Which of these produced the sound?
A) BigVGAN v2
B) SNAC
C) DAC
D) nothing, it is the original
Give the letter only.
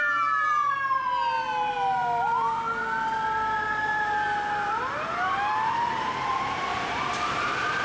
A